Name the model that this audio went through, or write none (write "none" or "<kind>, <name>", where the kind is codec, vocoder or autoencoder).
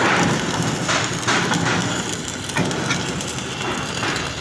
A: none